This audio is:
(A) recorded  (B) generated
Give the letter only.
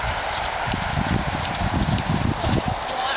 B